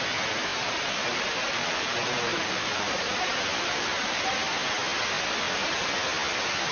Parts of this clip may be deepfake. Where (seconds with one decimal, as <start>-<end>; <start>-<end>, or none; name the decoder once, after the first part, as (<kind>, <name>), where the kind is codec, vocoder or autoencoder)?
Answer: 0.5-1.9 (vocoder, BigVGAN v2); 2.3-3.0; 3.7-4.3